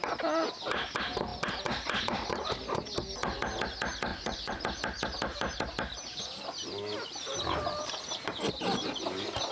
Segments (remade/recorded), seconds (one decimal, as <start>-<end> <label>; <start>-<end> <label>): 0.0-4.1 recorded; 4.1-4.6 remade; 4.6-9.5 recorded